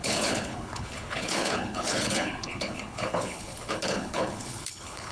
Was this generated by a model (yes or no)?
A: yes